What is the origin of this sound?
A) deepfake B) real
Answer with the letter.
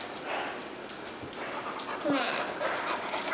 B